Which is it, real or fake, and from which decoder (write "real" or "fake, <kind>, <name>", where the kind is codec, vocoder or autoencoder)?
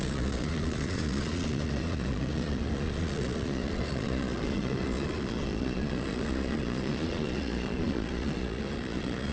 fake, vocoder, Vocos